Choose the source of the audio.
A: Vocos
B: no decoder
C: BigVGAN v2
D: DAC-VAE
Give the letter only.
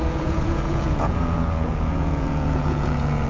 A